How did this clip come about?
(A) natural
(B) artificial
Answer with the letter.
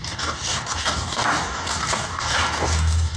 B